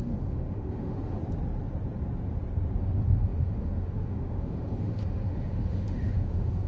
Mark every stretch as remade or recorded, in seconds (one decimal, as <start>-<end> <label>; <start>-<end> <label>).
0.0-1.2 remade; 1.2-2.8 recorded; 2.8-6.7 remade